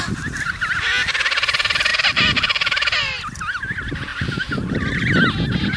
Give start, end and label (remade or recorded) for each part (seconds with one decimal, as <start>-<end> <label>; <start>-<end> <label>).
0.0-4.1 recorded; 4.1-4.7 remade; 4.7-5.8 recorded